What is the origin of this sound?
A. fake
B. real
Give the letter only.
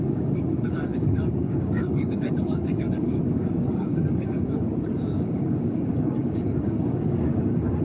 A